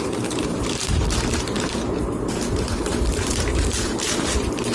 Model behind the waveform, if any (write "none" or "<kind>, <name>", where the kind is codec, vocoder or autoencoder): vocoder, BigVGAN v2